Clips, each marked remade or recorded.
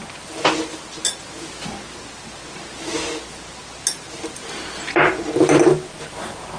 recorded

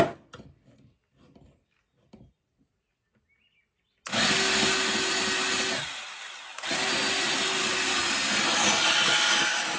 recorded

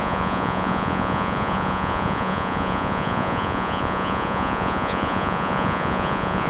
remade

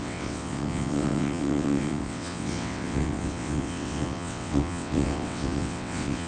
remade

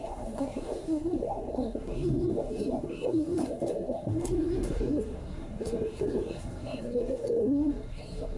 remade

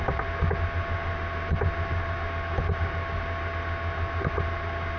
recorded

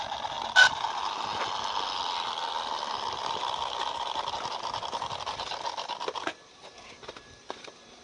recorded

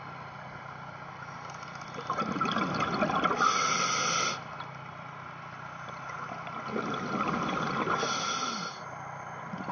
recorded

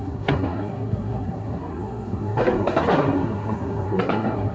remade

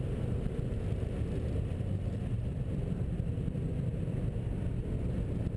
remade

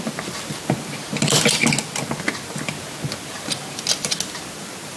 recorded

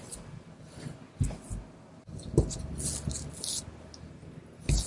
recorded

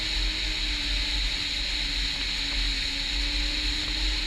recorded